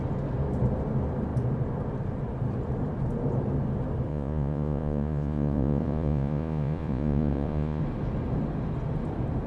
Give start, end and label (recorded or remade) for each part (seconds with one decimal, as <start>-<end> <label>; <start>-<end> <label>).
0.0-4.1 recorded; 4.1-7.8 remade; 7.8-9.5 recorded